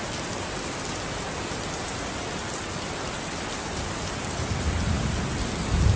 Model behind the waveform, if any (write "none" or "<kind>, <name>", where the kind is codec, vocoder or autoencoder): none